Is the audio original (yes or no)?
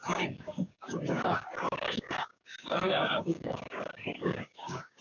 no